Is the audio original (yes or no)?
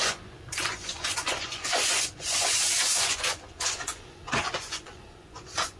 no